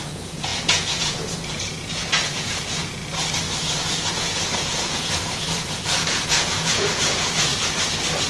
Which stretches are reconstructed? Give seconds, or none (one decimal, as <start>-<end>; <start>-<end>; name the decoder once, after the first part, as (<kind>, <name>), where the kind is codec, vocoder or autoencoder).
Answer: 0.0-3.0 (vocoder, Vocos); 4.1-7.5